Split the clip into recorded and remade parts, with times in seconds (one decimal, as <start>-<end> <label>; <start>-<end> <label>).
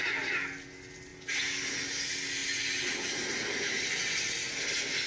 0.0-5.1 recorded